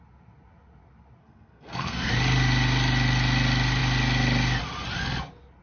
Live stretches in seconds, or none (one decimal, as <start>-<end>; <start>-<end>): 0.0-1.2; 2.1-5.6